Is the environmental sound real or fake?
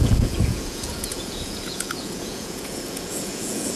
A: fake